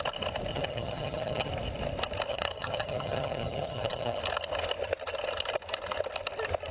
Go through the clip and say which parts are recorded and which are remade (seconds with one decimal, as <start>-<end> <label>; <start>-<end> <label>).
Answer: 0.0-0.5 recorded; 0.5-1.5 remade; 1.5-2.3 recorded; 2.3-4.2 remade; 4.2-6.7 recorded